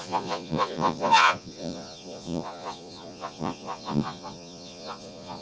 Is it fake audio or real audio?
fake